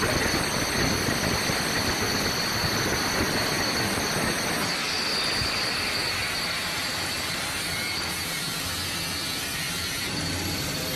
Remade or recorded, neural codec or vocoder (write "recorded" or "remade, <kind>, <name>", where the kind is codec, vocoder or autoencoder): recorded